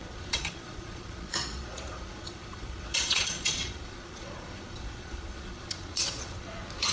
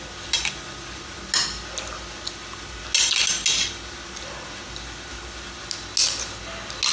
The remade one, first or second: first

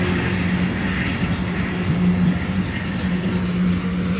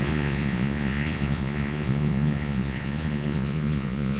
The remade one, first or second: second